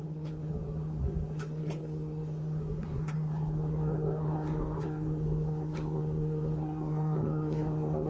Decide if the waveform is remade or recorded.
remade